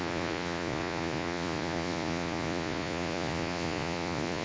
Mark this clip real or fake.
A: fake